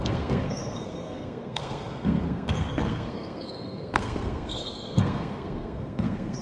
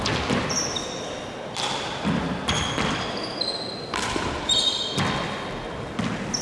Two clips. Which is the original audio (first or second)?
second